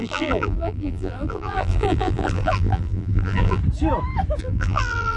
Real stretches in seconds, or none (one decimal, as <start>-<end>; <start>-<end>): 3.6-4.4